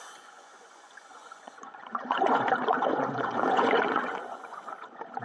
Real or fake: fake